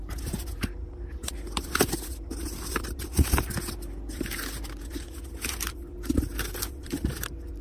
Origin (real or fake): real